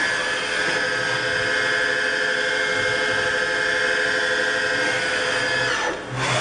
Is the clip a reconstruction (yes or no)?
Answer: no